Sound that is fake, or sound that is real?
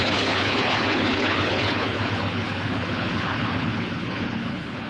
fake